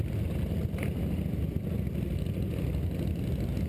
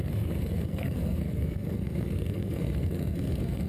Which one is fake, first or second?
second